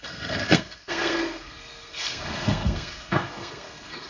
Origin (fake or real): fake